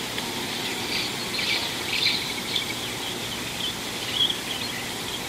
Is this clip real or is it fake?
fake